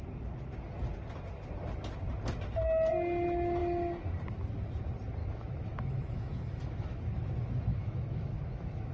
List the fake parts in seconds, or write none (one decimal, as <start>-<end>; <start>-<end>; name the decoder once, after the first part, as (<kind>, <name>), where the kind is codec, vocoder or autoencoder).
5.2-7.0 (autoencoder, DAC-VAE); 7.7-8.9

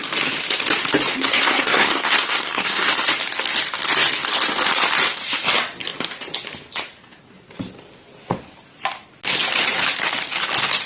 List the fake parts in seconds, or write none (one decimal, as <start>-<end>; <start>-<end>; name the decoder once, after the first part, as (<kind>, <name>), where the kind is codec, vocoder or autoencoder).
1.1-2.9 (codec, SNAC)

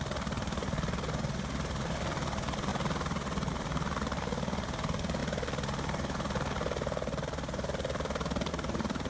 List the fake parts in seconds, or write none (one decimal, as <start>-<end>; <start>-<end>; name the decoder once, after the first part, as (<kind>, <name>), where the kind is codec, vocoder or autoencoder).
0.0-2.7 (vocoder, BigVGAN v2); 3.5-5.2; 8.5-9.1

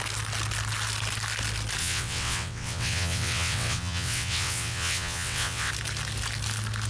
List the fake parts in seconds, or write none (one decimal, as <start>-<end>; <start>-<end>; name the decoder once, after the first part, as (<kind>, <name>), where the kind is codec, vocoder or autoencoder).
1.8-5.7 (vocoder, WaveNeXt)

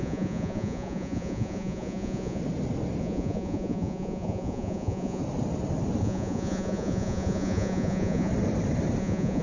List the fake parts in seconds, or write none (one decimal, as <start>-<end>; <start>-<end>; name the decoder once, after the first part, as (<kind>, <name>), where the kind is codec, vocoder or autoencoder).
0.0-2.4 (vocoder, Vocos); 3.0-5.2; 6.0-8.3; 9.0-9.4